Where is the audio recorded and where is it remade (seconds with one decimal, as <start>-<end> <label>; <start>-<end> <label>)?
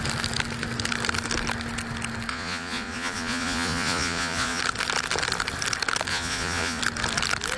0.0-2.3 recorded; 2.3-4.6 remade; 4.6-6.1 recorded; 6.1-6.8 remade; 6.8-7.6 recorded